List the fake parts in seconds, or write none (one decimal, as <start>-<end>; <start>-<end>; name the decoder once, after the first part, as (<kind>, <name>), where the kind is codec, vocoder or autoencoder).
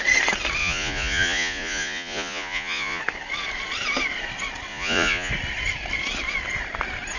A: 0.6-3.0 (vocoder, Vocos); 4.7-5.3